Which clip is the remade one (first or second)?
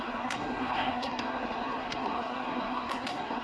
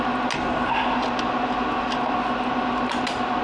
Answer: first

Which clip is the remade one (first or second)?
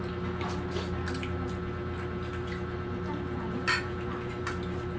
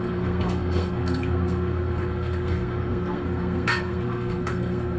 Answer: second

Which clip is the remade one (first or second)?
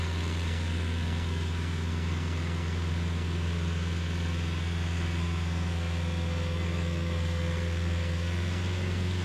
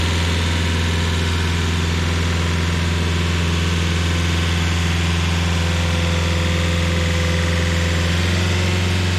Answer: first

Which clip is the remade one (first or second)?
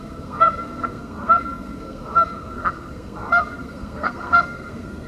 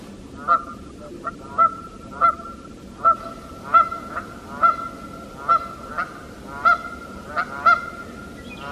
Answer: first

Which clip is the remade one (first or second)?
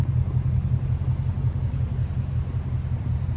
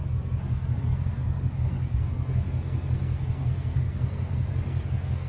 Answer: second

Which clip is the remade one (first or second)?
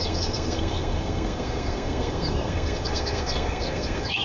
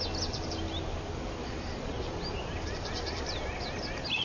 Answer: first